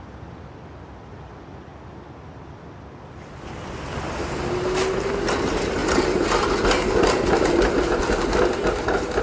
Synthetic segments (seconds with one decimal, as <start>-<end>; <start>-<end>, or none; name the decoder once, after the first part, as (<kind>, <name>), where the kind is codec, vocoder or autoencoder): none